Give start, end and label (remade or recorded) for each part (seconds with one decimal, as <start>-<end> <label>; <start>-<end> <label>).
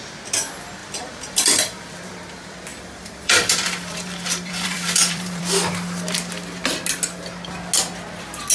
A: 0.0-0.8 recorded; 0.8-1.9 remade; 1.9-2.7 recorded; 2.7-5.4 remade; 5.4-8.5 recorded